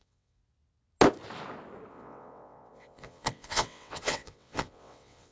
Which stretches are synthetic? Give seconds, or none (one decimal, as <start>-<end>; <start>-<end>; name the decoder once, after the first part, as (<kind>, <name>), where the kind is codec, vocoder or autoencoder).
0.0-0.4 (vocoder, WaveNeXt); 1.9-5.3